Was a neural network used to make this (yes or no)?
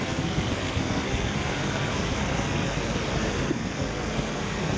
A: yes